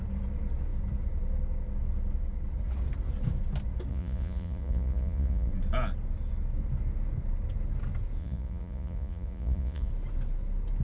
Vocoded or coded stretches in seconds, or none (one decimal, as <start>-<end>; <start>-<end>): 3.9-5.5; 8.2-9.9